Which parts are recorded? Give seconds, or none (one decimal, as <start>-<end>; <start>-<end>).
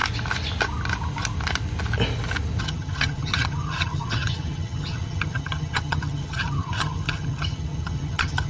0.0-2.6